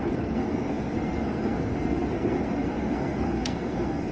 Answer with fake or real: fake